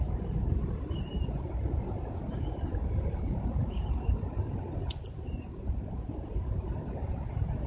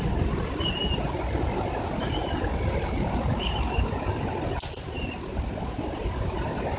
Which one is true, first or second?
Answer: second